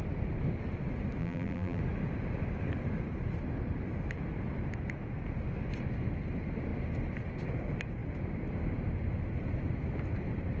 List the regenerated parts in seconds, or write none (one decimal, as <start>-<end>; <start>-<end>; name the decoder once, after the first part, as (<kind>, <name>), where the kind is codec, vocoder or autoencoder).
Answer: 1.2-1.8 (vocoder, BigVGAN v2)